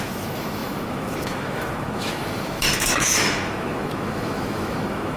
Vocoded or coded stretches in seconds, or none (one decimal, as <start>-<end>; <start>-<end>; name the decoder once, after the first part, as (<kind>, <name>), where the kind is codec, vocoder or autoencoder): 0.0-5.2 (autoencoder, DAC-VAE)